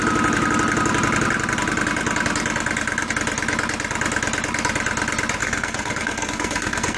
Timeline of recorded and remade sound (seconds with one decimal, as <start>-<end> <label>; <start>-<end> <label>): 0.0-5.4 recorded; 5.4-7.0 remade